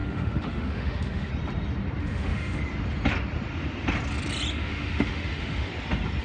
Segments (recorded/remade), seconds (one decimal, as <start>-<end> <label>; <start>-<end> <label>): 0.0-1.3 remade; 1.3-2.0 recorded; 2.0-2.6 remade; 2.6-4.5 recorded; 4.5-5.7 remade; 5.7-6.2 recorded